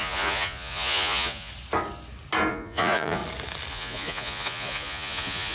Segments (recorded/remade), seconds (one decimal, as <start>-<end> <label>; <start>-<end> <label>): 0.0-1.5 remade; 1.5-2.5 recorded; 2.5-3.2 remade; 3.2-3.7 recorded; 3.7-5.5 remade